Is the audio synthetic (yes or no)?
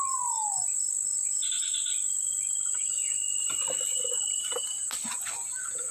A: no